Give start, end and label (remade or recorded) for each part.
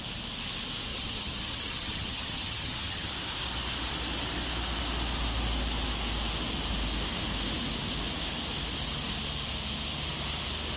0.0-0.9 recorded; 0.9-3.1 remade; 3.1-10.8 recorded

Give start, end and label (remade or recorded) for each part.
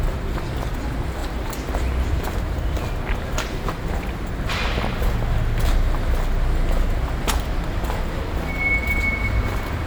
0.0-9.9 recorded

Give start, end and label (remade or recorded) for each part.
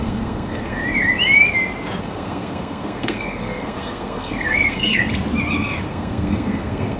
0.0-0.8 remade; 0.8-2.0 recorded; 2.0-5.0 remade; 5.0-5.9 recorded; 5.9-7.0 remade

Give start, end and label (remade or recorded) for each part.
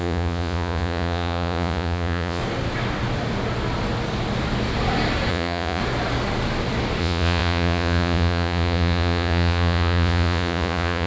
0.0-2.4 remade; 2.4-5.3 recorded; 5.3-5.8 remade; 5.8-7.0 recorded; 7.0-11.1 remade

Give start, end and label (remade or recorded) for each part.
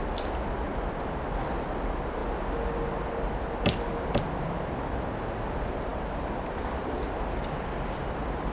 0.0-8.5 recorded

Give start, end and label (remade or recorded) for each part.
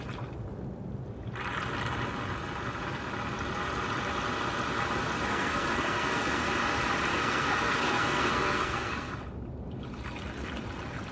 0.0-5.3 recorded; 5.3-6.5 remade; 6.5-7.1 recorded; 7.1-9.1 remade; 9.1-11.1 recorded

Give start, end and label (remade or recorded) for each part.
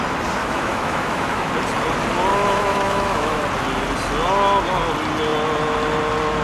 0.0-0.4 recorded; 0.4-1.5 remade; 1.5-2.3 recorded; 2.3-3.4 remade; 3.4-6.4 recorded